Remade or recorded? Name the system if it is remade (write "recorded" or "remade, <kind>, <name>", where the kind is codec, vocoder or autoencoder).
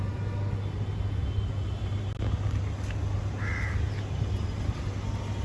recorded